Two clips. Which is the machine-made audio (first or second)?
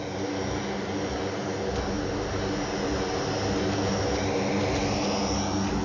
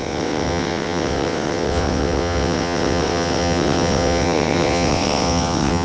second